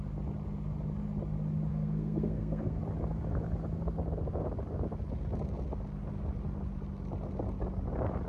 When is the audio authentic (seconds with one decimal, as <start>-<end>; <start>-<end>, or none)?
0.0-1.7; 2.8-8.3